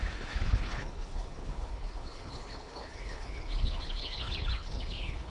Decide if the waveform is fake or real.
fake